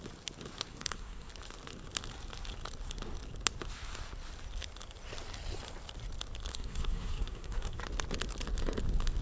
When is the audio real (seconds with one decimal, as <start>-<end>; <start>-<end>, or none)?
0.0-0.7; 1.3-6.5; 7.8-9.2